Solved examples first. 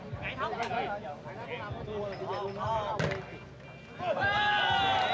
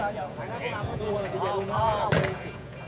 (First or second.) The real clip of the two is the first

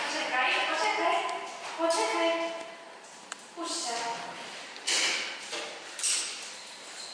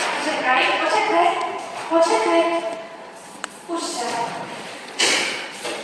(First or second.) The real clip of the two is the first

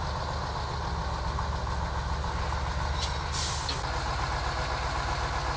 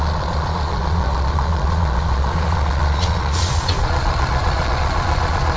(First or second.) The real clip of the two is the first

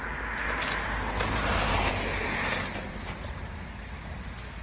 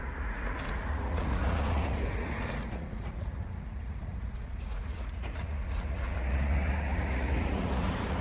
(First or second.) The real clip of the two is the first